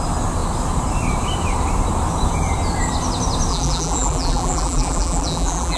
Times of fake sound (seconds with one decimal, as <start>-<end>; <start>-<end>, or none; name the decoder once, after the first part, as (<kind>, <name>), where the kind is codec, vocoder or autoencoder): 3.5-5.8 (vocoder, BigVGAN v2)